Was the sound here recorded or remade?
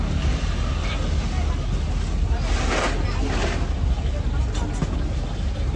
recorded